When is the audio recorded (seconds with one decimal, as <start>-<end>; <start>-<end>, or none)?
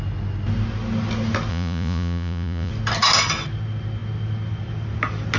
0.0-1.5; 2.7-5.4